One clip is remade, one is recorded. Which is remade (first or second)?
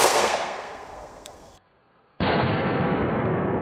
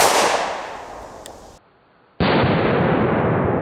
first